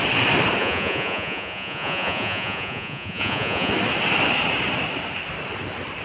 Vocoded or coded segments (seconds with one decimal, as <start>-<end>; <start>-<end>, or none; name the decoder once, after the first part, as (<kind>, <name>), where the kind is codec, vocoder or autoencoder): 0.6-3.7 (vocoder, Vocos)